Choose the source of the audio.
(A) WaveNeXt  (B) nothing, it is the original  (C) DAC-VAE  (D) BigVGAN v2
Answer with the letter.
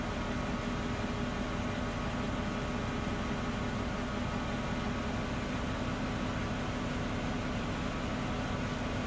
B